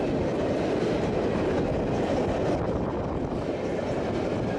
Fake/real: real